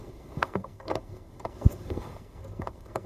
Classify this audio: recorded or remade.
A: remade